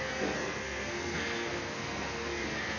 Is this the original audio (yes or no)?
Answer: no